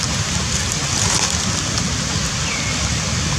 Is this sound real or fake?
real